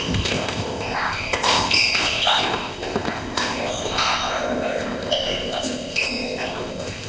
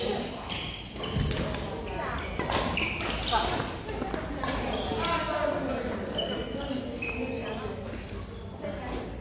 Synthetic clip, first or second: first